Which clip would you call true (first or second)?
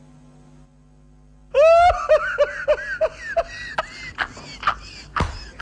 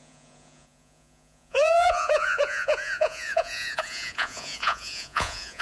first